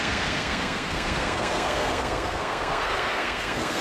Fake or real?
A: fake